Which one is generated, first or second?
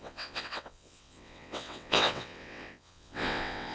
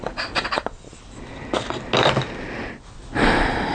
first